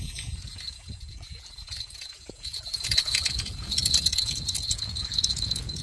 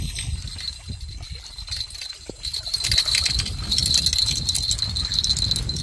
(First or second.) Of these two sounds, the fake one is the first